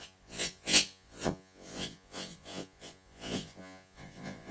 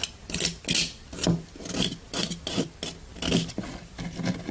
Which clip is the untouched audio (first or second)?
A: second